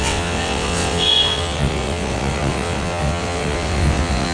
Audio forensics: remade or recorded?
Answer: remade